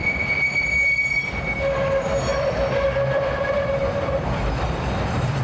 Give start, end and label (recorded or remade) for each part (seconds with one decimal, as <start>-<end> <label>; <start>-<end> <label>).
0.0-1.3 remade; 1.3-2.3 recorded; 2.3-5.4 remade